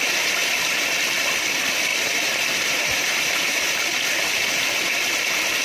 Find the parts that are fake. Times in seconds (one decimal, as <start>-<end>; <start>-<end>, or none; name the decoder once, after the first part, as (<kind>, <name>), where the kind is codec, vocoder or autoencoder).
0.4-0.9 (vocoder, BigVGAN v2); 1.9-4.0